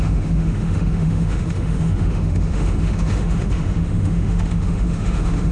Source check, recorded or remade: remade